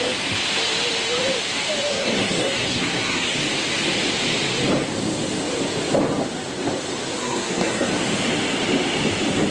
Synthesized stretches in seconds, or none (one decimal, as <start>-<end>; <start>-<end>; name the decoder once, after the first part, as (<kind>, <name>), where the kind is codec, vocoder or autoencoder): 1.9-3.4 (codec, SNAC); 7.2-7.9